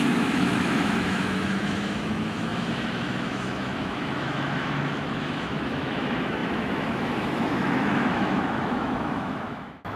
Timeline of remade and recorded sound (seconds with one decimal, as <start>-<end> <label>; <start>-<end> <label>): 0.0-10.0 remade